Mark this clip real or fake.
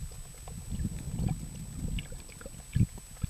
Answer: real